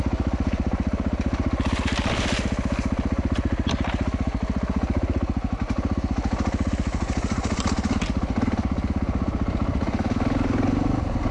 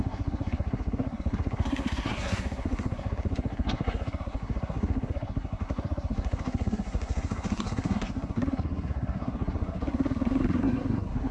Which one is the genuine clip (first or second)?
first